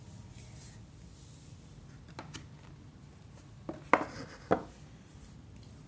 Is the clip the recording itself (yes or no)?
yes